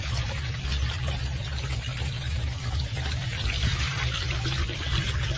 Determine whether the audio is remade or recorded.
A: remade